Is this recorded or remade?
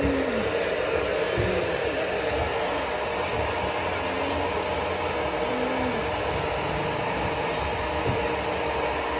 recorded